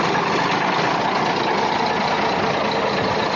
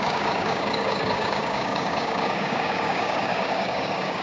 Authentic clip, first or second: first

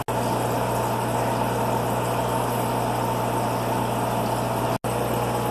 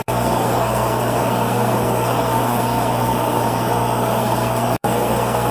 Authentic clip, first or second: first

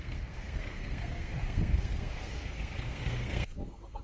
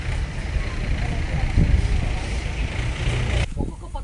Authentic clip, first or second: second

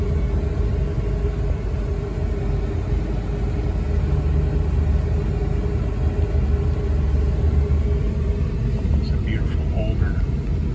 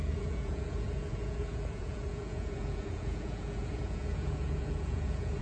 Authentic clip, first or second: first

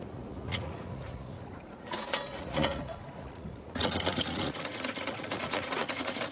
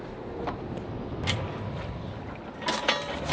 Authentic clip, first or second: second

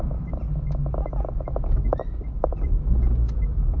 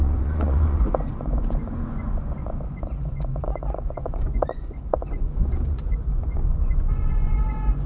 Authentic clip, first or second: first